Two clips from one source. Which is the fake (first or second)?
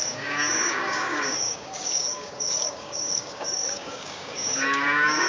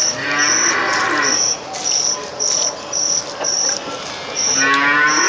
first